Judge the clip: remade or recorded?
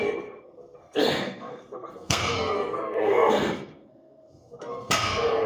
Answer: remade